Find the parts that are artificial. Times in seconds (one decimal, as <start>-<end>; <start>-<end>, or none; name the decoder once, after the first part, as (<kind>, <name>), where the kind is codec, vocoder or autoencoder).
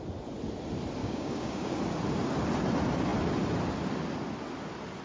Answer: 1.0-1.8 (codec, DAC)